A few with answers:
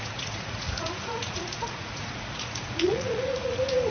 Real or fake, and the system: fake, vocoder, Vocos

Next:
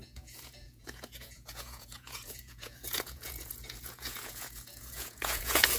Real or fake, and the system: fake, vocoder, Vocos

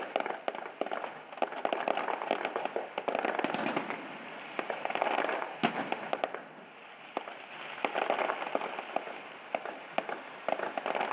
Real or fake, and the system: real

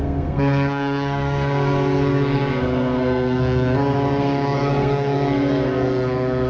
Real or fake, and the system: fake, codec, SNAC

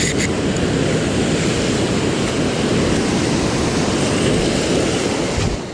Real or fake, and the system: real